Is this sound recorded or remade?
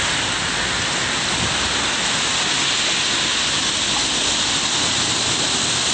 recorded